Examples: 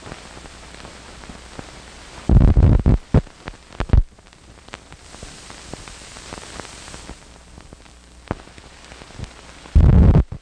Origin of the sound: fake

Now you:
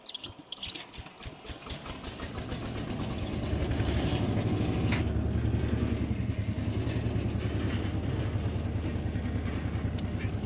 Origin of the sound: real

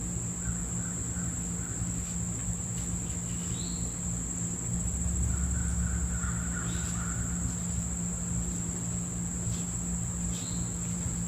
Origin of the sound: real